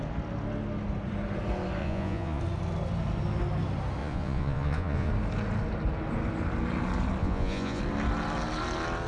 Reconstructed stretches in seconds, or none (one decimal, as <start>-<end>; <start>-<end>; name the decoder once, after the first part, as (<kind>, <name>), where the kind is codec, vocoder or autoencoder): 1.8-2.4 (vocoder, Vocos); 4.0-5.1; 7.2-7.8